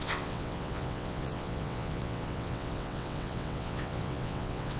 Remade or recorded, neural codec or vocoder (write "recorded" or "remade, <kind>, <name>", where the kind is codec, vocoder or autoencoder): remade, vocoder, WaveNeXt